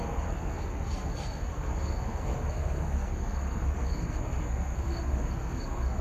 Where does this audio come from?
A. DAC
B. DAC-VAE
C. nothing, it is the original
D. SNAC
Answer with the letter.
D